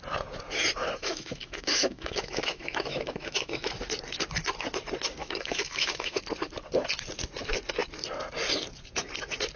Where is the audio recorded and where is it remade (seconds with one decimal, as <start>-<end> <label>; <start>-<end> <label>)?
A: 0.0-1.0 recorded; 1.0-3.7 remade; 3.7-5.2 recorded; 5.2-6.2 remade; 6.2-9.6 recorded